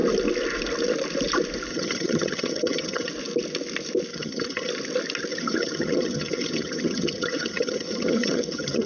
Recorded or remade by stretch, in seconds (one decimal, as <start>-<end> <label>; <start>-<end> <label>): 0.0-1.7 recorded; 1.7-3.1 remade; 3.1-4.1 recorded; 4.1-4.7 remade; 4.7-5.3 recorded; 5.3-8.9 remade